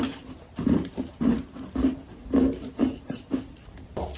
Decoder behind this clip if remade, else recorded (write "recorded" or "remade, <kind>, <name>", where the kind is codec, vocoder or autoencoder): recorded